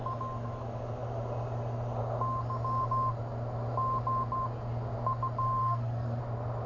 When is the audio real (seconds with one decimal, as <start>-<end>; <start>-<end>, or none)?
0.0-5.6; 6.2-6.7